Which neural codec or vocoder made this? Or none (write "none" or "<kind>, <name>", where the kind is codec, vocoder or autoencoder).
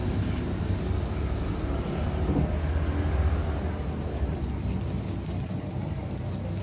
none